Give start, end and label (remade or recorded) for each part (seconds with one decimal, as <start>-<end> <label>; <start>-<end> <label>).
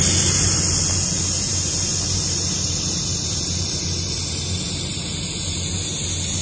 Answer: 0.0-6.4 recorded